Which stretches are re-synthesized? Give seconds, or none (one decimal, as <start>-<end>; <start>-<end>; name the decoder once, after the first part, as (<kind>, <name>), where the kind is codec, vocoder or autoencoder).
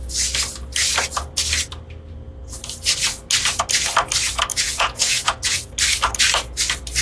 4.5-5.7 (vocoder, Vocos)